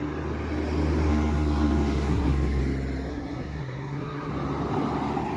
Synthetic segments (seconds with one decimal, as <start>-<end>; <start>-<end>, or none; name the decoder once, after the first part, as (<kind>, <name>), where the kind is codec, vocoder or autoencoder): 1.1-2.6 (codec, SNAC); 3.1-4.3